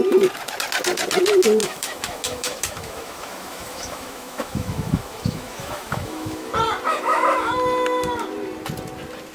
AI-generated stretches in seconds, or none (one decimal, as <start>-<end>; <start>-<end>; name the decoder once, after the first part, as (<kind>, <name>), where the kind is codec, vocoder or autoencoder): 1.6-6.5 (autoencoder, DAC-VAE); 6.9-7.5